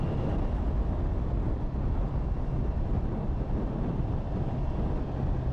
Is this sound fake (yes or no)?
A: no